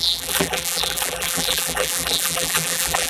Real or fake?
fake